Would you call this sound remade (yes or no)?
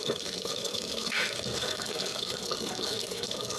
yes